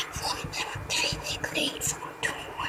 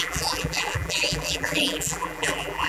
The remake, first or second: second